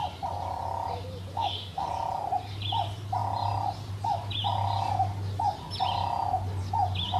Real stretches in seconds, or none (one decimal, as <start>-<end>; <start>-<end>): 0.0-1.3; 1.9-7.2